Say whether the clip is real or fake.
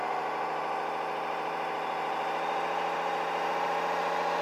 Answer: fake